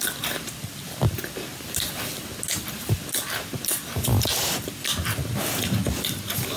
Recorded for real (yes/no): yes